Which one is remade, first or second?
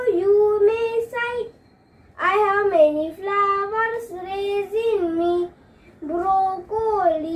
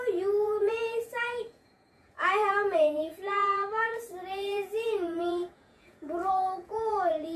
second